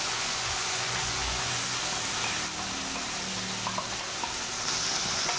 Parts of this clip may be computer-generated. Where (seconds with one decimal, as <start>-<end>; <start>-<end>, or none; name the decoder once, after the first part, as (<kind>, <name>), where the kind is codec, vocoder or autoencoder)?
0.0-1.8 (vocoder, Vocos); 5.0-5.4